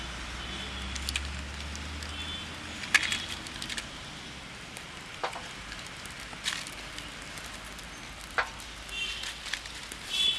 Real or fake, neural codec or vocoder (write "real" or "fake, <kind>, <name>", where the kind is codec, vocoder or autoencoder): real